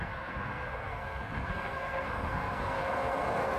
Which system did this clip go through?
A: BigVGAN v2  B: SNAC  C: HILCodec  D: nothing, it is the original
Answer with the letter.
B